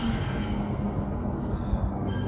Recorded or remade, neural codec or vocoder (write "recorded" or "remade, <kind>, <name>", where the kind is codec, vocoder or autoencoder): remade, codec, SNAC